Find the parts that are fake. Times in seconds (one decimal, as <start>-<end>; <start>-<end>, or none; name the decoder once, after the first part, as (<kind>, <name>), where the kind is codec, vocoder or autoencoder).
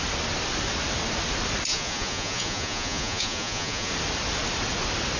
1.7-3.9 (vocoder, Vocos)